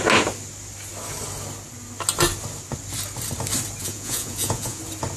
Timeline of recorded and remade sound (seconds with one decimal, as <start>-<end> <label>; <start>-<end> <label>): 0.0-3.8 recorded; 3.8-4.8 remade; 4.8-5.2 recorded

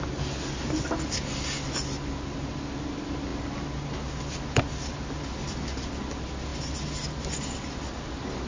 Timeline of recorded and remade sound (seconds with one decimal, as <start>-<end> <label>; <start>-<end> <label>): 0.0-8.5 recorded

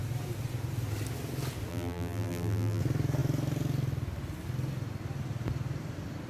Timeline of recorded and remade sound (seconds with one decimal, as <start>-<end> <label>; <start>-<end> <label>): 0.0-1.7 recorded; 1.7-2.8 remade; 2.8-6.3 recorded

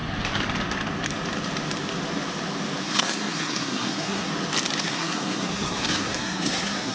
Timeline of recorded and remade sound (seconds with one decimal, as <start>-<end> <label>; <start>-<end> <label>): 0.0-2.8 recorded; 2.8-4.3 remade; 4.3-4.8 recorded; 4.8-6.9 remade

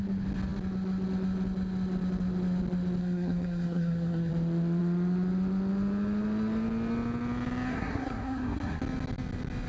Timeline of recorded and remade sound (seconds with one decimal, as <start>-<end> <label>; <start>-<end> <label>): 0.0-3.0 recorded; 3.0-4.3 remade; 4.3-7.7 recorded; 7.7-8.8 remade; 8.8-9.7 recorded

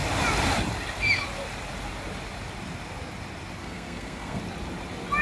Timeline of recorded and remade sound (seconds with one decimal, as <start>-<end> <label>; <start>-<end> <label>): 0.0-3.6 recorded; 3.6-4.4 remade; 4.4-5.2 recorded

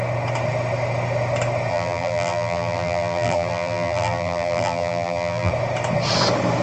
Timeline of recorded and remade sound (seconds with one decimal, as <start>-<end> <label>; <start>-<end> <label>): 0.0-1.7 recorded; 1.7-5.5 remade; 5.5-6.6 recorded

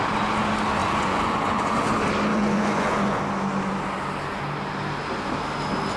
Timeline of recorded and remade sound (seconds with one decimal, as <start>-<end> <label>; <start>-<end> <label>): 0.0-0.8 recorded; 0.8-1.9 remade; 1.9-2.3 recorded; 2.3-3.2 remade; 3.2-6.0 recorded